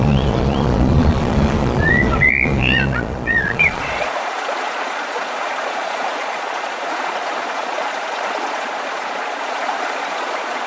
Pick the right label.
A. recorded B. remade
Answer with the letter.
B